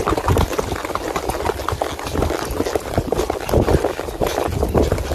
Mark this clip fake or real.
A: real